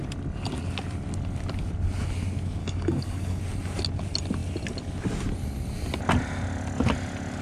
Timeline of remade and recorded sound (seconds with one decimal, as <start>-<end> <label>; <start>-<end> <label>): 0.0-2.6 recorded; 2.6-3.4 remade; 3.4-7.4 recorded